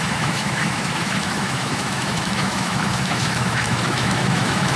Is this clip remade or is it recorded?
remade